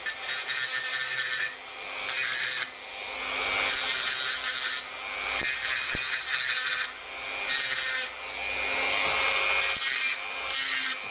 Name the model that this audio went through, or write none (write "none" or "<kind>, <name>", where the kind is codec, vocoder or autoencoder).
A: none